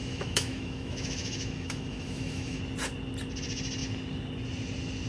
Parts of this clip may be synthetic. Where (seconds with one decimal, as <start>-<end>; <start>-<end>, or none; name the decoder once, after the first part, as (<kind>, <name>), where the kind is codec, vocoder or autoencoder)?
0.0-2.6 (autoencoder, DAC-VAE)

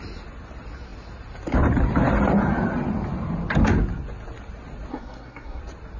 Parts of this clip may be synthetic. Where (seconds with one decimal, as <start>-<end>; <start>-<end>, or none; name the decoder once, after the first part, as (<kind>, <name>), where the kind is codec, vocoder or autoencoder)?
4.9-5.6 (codec, SNAC)

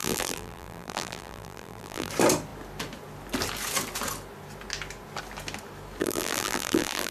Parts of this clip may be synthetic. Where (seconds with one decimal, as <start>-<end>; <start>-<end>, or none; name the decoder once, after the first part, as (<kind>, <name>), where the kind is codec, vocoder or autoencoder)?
0.0-2.1 (vocoder, BigVGAN v2); 6.0-7.1

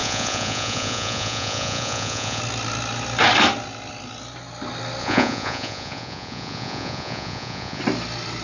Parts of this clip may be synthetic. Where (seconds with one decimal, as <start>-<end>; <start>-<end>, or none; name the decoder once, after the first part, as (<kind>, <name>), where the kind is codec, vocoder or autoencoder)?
0.0-2.4 (vocoder, Vocos); 5.0-7.8

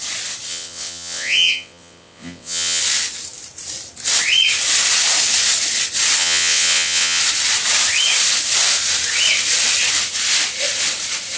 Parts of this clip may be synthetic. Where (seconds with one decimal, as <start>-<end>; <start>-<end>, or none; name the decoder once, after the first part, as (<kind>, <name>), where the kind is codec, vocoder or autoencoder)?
0.5-2.8 (vocoder, WaveNeXt); 6.2-7.2